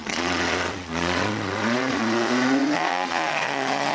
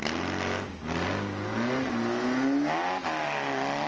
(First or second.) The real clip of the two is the second